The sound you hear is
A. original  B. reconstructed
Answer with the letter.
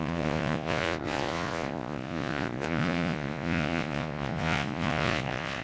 B